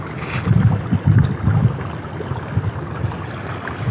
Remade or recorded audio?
recorded